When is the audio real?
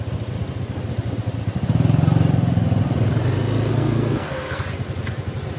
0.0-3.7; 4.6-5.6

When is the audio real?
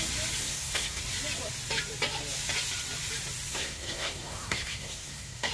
0.0-0.4; 1.0-3.5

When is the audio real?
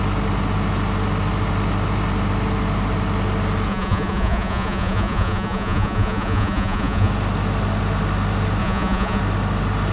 0.0-3.7; 7.1-8.6; 9.2-9.9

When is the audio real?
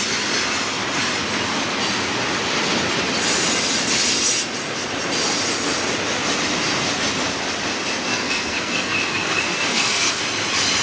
0.0-8.1; 10.2-10.8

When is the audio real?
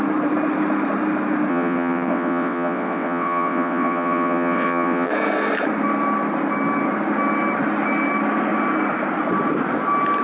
0.0-1.5; 5.1-10.2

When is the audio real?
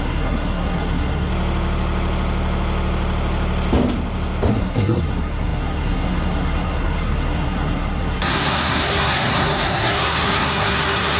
1.3-4.5